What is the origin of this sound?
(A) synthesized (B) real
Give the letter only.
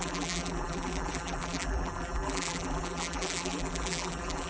A